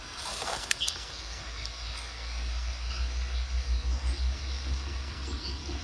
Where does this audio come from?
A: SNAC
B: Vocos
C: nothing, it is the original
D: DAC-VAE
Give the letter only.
A